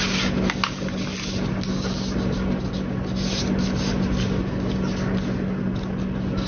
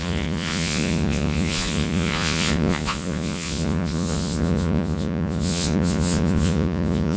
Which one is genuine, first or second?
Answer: first